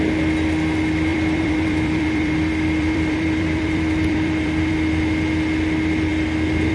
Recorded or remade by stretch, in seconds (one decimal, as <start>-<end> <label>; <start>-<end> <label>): 0.0-1.1 recorded; 1.1-4.7 remade; 4.7-6.7 recorded